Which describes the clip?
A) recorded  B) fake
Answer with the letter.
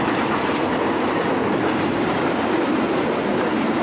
A